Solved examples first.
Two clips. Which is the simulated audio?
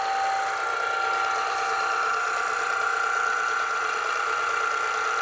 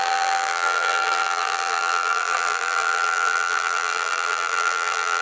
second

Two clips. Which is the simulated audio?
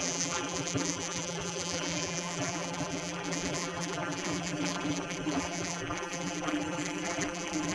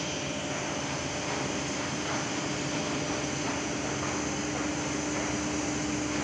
first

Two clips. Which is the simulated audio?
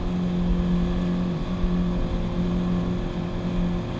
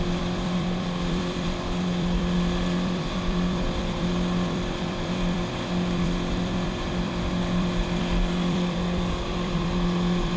second